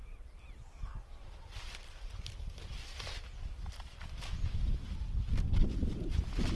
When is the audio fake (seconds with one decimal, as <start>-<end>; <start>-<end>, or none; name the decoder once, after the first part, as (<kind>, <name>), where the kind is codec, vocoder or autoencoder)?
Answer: 0.0-2.1 (vocoder, BigVGAN v2)